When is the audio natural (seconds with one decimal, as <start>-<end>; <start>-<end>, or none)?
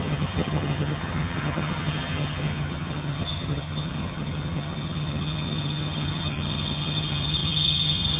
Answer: none